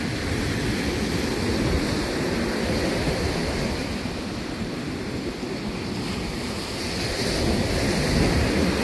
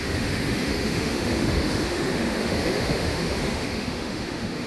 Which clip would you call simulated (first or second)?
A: second